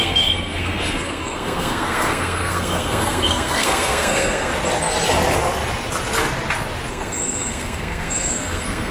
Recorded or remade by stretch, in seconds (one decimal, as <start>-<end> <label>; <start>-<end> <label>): 0.0-4.5 remade; 4.5-6.9 recorded; 6.9-8.9 remade